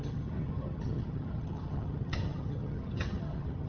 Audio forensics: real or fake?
fake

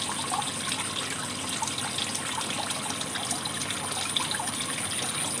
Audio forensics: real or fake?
real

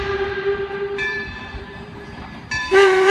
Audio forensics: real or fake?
fake